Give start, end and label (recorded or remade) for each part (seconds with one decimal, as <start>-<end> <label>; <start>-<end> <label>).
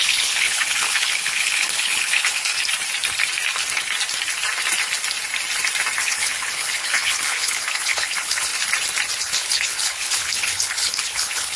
0.0-2.5 remade; 2.5-6.0 recorded; 6.0-8.5 remade; 8.5-9.2 recorded; 9.2-11.6 remade